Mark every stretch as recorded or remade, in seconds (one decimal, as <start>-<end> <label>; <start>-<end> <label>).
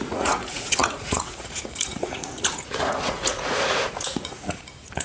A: 0.0-5.0 remade